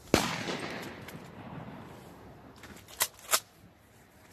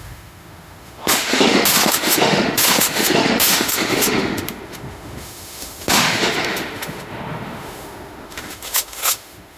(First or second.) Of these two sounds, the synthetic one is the second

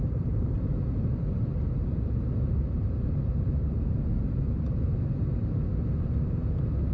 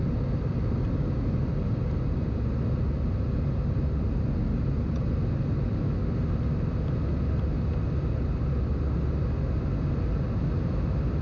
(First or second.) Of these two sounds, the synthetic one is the first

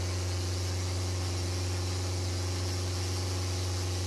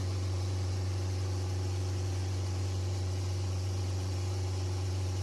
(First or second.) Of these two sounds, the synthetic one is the second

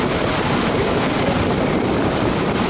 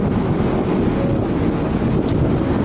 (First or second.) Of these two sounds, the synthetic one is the first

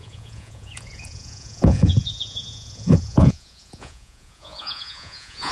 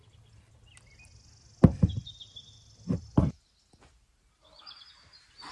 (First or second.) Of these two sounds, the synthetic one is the first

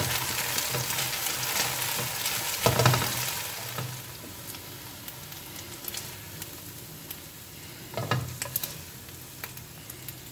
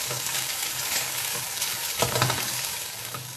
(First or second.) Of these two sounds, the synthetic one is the second